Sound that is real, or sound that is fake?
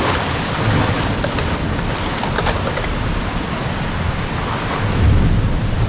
real